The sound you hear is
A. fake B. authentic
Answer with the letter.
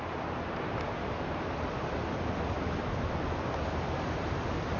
B